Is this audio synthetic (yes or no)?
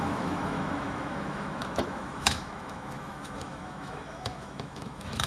yes